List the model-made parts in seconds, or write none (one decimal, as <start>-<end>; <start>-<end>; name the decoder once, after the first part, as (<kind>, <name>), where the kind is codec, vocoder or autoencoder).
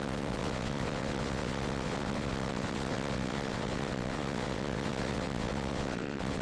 0.0-6.4 (vocoder, WaveNeXt)